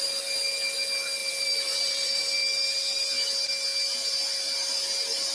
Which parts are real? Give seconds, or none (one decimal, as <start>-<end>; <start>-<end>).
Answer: 0.0-1.2; 2.2-5.3